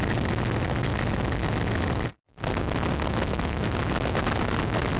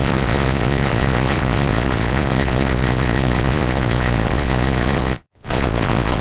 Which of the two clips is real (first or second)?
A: first